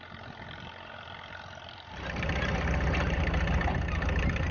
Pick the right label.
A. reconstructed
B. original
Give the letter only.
B